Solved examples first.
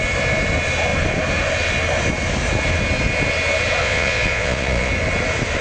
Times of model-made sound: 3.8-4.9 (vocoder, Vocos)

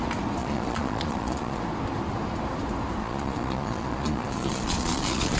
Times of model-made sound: 0.4-1.6 (vocoder, Vocos); 3.0-5.4

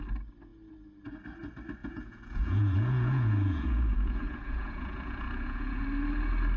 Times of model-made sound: 1.8-5.8 (vocoder, Vocos)

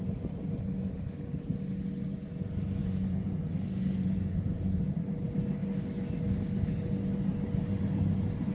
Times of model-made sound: 2.8-3.4 (vocoder, Vocos); 3.8-4.9

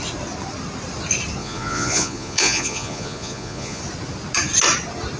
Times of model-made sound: 1.4-3.8 (vocoder, Vocos)

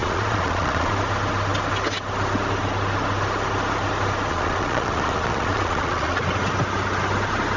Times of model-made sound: 0.0-0.9 (vocoder, Vocos); 4.3-6.2